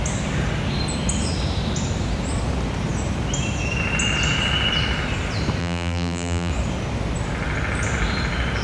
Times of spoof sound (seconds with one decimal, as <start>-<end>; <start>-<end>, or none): 5.6-6.5